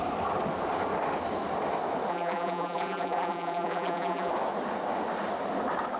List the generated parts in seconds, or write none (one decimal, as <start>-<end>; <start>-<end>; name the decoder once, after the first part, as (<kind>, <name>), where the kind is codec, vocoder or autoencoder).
2.1-4.3 (vocoder, BigVGAN v2)